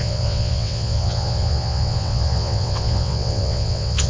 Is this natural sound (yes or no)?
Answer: no